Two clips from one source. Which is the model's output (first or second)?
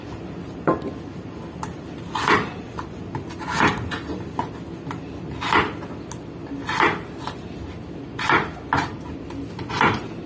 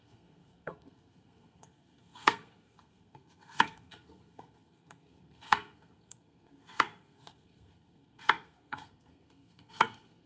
second